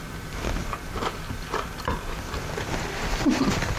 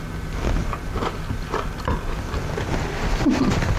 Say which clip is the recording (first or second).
second